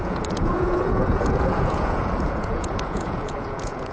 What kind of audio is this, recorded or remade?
remade